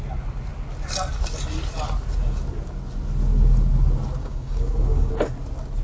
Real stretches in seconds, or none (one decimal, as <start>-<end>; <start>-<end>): 0.0-4.2; 5.1-5.8